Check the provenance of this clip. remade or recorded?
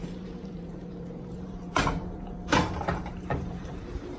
remade